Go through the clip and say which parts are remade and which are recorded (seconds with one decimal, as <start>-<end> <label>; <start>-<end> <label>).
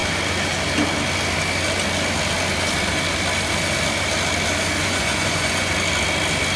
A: 0.0-4.8 recorded; 4.8-5.7 remade; 5.7-6.6 recorded